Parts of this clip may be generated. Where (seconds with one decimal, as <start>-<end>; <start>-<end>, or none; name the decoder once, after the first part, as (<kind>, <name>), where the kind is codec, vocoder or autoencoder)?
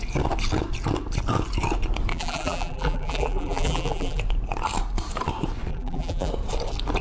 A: 2.1-4.2 (vocoder, BigVGAN v2); 5.7-6.3